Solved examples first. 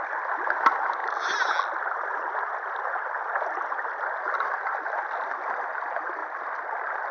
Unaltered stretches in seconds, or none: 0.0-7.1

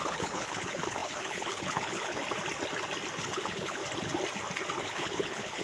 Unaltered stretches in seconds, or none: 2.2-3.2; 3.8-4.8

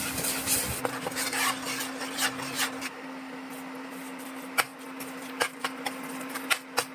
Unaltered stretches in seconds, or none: 0.0-6.9

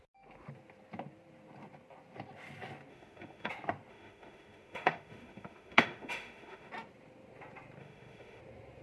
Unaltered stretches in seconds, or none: 0.0-2.9; 3.5-3.9; 6.7-7.8; 8.4-8.8

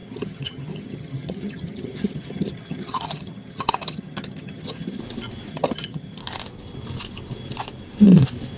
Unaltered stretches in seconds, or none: 5.0-5.5; 6.2-8.6

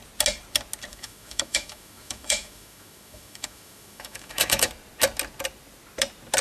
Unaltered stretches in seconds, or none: 0.0-0.9; 4.7-6.4